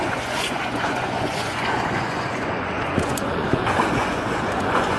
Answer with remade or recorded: remade